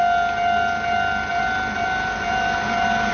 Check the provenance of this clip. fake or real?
real